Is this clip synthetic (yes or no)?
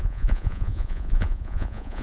yes